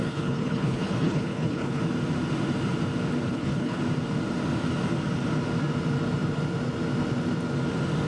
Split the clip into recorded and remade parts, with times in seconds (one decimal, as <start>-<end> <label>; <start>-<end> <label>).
0.0-1.8 remade; 1.8-3.3 recorded; 3.3-3.8 remade; 3.8-8.1 recorded